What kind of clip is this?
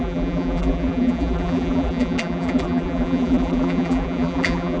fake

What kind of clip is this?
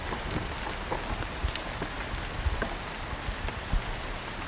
real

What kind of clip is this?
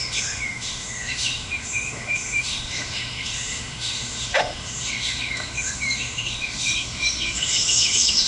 fake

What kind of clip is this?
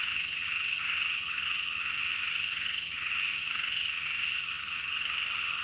fake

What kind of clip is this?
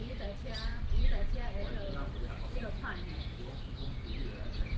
fake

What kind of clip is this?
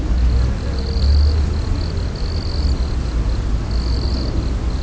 real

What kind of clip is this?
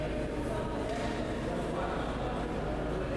real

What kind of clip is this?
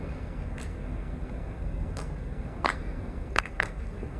fake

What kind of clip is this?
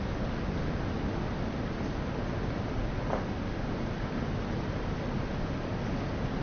real